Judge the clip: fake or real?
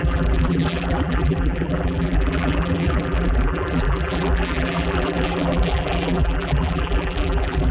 fake